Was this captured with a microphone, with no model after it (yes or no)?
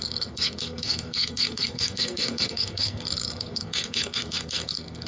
no